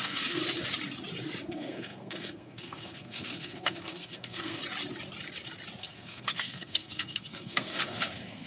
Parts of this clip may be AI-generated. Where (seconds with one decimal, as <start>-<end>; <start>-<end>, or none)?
0.0-0.4; 1.5-4.6; 5.8-8.5